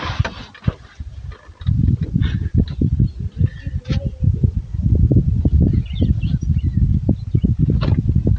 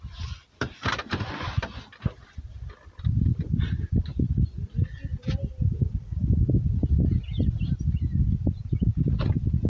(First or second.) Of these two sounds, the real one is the second